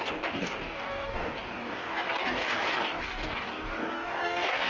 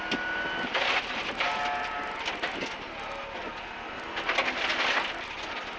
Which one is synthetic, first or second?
first